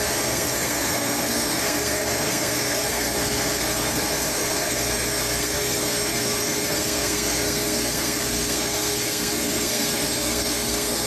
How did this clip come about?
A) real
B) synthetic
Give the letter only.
B